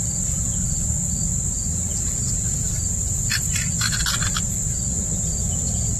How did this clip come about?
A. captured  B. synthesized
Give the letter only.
A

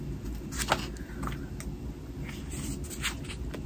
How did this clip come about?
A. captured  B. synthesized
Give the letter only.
A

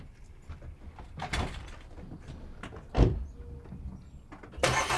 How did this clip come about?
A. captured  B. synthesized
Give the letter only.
A